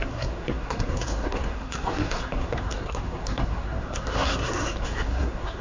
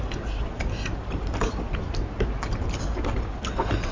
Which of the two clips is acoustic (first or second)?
second